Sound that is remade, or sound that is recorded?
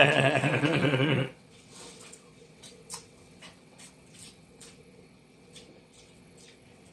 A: remade